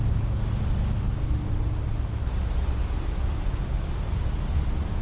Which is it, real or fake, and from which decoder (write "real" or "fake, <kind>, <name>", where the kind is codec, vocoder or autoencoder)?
real